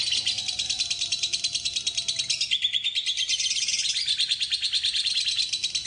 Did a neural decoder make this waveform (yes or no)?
no